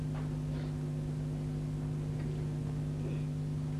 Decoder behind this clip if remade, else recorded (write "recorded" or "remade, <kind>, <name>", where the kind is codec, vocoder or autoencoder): recorded